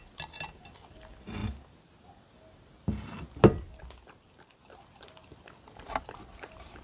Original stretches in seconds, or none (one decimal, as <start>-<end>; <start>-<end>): 0.0-6.8